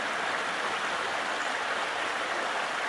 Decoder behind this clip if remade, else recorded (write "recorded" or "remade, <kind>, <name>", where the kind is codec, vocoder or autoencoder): recorded